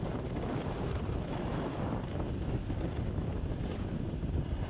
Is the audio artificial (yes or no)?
no